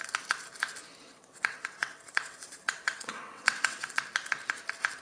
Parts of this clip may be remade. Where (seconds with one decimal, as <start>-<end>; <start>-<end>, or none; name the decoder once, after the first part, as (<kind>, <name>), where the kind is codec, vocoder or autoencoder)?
1.0-4.0 (vocoder, WaveNeXt)